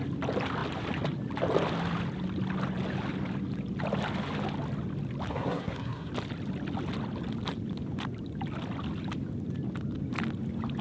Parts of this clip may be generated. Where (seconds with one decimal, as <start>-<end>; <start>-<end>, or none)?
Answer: 5.3-6.1